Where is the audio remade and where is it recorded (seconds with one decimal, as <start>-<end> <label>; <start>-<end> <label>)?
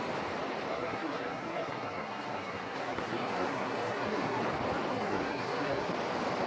0.0-0.7 recorded; 0.7-4.4 remade; 4.4-4.9 recorded; 4.9-5.9 remade; 5.9-6.5 recorded